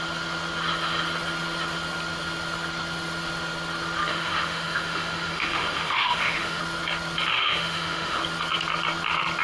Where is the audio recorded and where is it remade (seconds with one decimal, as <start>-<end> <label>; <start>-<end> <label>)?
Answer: 0.0-4.1 recorded; 4.1-6.6 remade; 6.6-7.3 recorded; 7.3-8.2 remade; 8.2-9.4 recorded